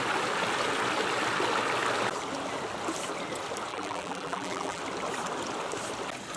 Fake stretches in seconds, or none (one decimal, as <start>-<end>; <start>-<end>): 3.7-4.8